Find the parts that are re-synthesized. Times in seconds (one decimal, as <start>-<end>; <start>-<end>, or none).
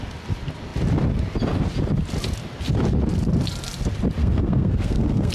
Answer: 4.2-5.3